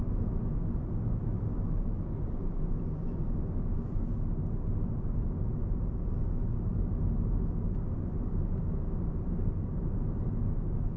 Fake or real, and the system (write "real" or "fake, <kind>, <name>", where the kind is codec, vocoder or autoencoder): real